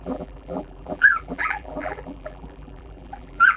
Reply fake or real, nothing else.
fake